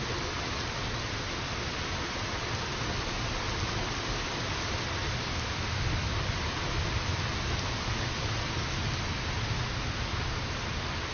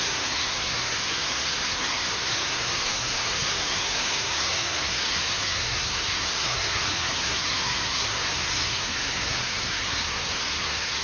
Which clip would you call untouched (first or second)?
first